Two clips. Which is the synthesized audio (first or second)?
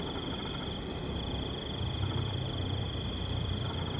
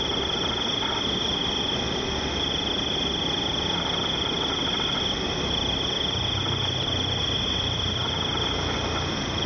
first